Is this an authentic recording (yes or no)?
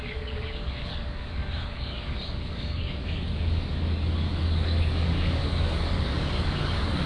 no